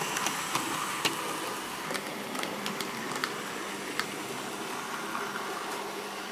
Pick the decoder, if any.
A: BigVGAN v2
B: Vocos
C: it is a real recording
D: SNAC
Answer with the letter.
C